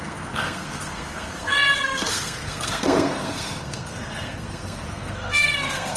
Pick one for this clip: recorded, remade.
remade